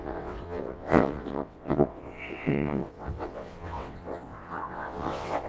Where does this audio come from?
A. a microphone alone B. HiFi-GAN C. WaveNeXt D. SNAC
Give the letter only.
C